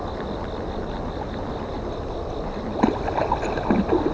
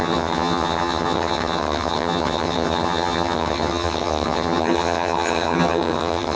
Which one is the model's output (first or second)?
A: second